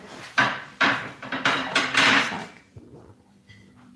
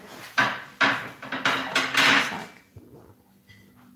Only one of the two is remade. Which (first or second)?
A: first